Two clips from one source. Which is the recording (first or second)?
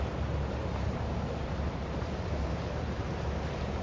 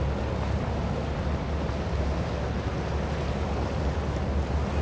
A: second